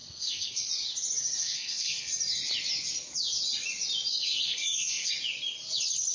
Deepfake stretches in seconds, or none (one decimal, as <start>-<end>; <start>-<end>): 0.0-0.7; 1.4-2.1; 4.1-5.1